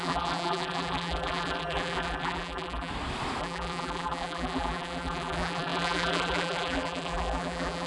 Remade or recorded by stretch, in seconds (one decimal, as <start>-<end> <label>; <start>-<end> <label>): 0.0-2.9 remade; 2.9-3.4 recorded; 3.4-7.9 remade